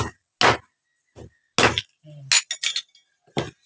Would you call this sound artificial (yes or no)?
no